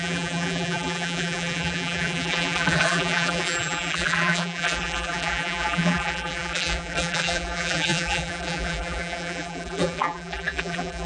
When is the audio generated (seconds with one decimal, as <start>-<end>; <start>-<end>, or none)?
0.0-11.1